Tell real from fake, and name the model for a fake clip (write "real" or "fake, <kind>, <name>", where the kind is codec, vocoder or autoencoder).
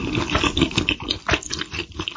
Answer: fake, vocoder, BigVGAN v2